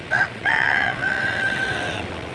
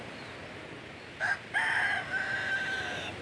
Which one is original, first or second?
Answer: second